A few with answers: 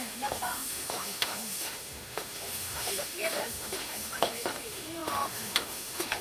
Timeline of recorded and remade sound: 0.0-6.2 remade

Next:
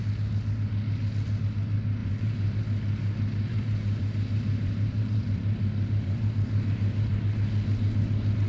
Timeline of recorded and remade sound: 0.0-2.0 recorded; 2.0-2.6 remade; 2.6-3.5 recorded; 3.5-7.1 remade; 7.1-8.5 recorded

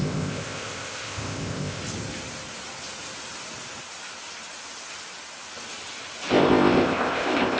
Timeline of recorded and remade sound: 0.0-1.8 remade; 1.8-6.3 recorded; 6.3-7.6 remade

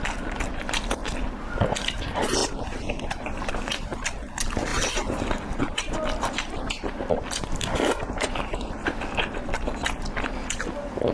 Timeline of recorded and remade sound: 0.0-11.1 recorded

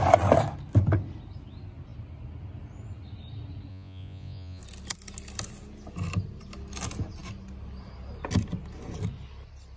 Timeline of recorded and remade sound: 0.0-3.7 recorded; 3.7-4.6 remade; 4.6-9.8 recorded